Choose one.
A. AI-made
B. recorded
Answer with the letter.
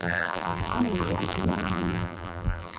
A